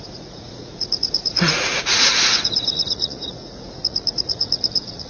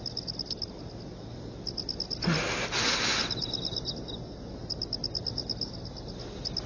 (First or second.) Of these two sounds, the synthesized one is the first